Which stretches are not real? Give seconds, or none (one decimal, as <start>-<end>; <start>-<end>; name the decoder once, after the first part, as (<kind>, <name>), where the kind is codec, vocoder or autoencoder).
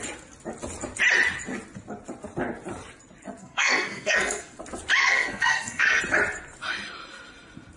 3.4-4.6 (codec, SNAC); 5.0-6.0